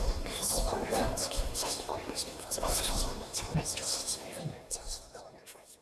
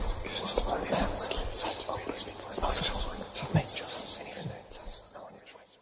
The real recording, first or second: second